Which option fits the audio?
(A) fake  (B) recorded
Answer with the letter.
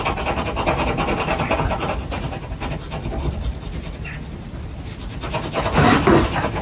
B